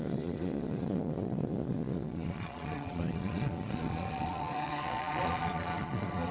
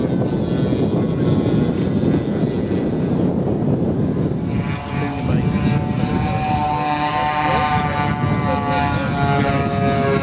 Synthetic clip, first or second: first